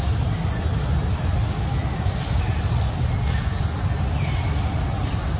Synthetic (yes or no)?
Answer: no